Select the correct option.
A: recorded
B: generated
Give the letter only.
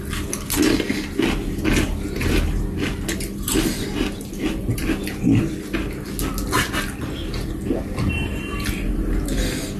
A